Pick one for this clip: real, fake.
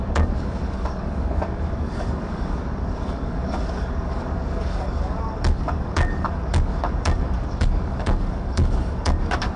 fake